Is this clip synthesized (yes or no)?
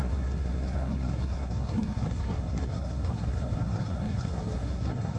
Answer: yes